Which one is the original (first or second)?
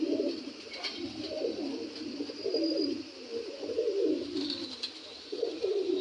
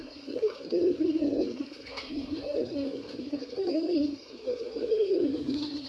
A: first